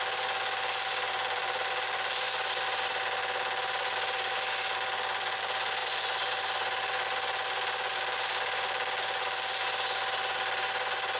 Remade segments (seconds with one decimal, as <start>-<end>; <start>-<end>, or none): 5.8-9.6